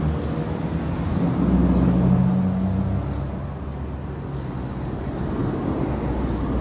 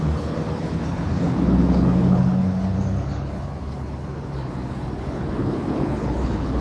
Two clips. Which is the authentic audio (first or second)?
first